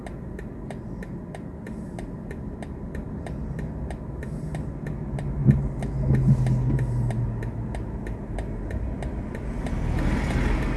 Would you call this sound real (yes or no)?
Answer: yes